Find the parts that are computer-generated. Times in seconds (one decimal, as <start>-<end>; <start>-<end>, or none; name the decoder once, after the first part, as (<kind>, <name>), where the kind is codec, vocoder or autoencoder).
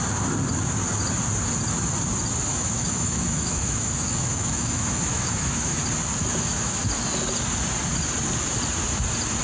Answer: 2.5-5.8 (autoencoder, DAC-VAE); 6.2-6.8